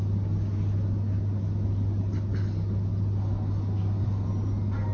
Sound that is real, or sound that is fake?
real